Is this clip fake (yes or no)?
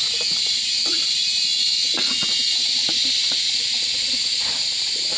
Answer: yes